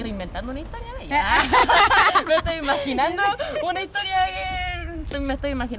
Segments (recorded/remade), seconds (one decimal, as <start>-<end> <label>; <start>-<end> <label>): 0.0-1.6 recorded; 1.6-2.1 remade; 2.1-3.8 recorded; 3.8-5.3 remade; 5.3-5.8 recorded